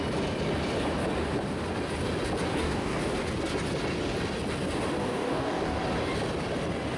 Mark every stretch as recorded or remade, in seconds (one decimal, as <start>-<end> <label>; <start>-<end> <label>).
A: 0.0-2.5 recorded; 2.5-3.0 remade; 3.0-5.0 recorded; 5.0-5.8 remade; 5.8-7.0 recorded